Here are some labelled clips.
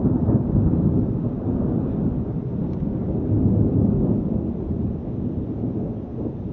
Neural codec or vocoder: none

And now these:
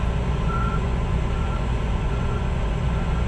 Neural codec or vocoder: vocoder, Vocos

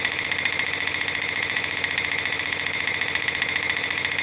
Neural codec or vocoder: vocoder, Vocos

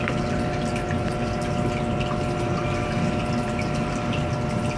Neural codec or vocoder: none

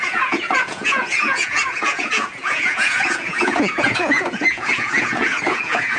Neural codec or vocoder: vocoder, Vocos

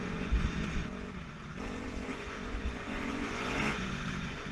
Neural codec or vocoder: vocoder, Vocos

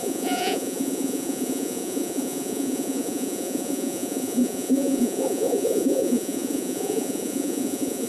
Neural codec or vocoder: vocoder, Vocos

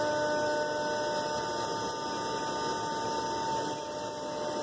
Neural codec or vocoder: none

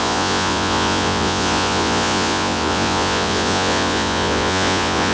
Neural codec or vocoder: vocoder, Vocos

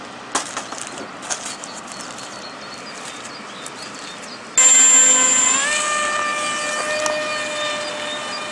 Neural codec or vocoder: none